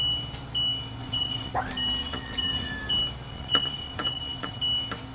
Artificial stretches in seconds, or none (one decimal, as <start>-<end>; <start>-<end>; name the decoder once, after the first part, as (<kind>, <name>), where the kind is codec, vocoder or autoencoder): 1.0-1.5 (vocoder, WaveNeXt); 2.0-2.7; 3.3-4.6